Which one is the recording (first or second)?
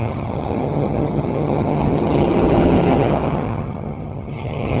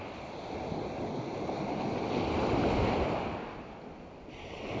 second